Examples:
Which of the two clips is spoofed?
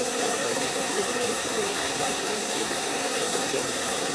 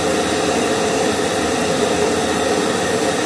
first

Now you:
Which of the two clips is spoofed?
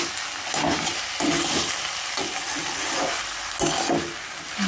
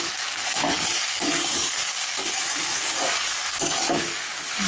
second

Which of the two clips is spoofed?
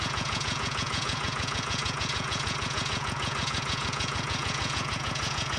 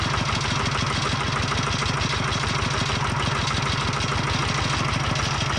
first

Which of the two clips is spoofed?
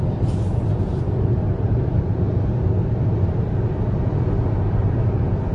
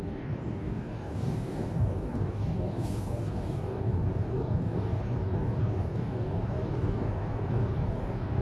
second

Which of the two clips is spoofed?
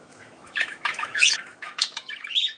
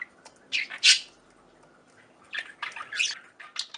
first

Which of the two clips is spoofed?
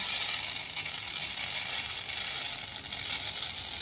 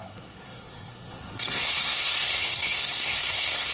second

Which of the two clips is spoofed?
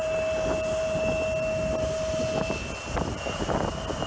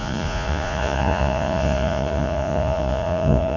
second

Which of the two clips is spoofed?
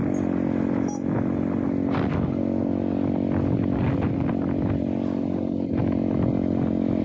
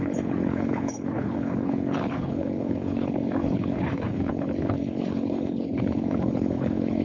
second